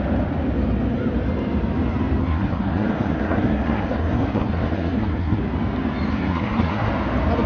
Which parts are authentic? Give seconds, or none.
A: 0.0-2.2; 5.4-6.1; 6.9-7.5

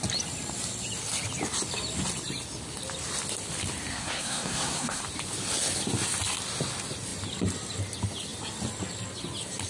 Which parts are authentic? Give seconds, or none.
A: 0.0-3.9; 5.0-9.7